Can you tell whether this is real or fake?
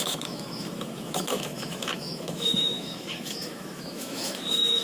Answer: fake